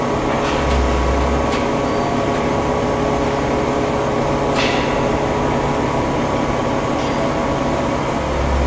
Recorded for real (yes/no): yes